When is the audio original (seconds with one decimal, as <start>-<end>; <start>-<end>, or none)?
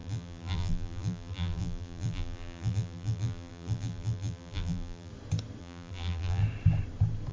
5.1-5.6; 6.4-7.3